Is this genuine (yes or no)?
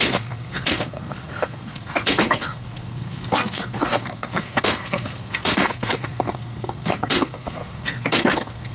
no